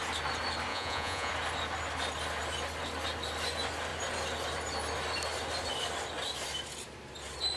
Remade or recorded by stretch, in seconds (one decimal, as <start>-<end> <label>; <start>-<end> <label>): 0.0-0.7 recorded; 0.7-1.3 remade; 1.3-7.6 recorded